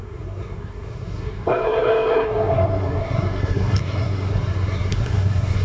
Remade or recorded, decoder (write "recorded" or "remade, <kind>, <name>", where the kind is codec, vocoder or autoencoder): remade, codec, SNAC